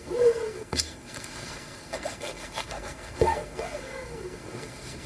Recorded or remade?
remade